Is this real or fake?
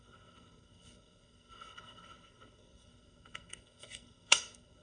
fake